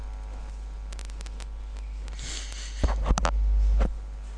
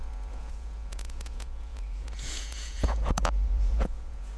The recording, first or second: first